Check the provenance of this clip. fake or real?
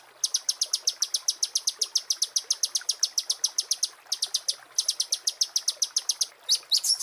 real